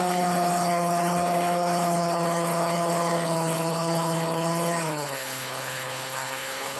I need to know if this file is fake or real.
fake